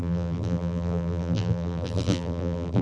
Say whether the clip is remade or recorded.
remade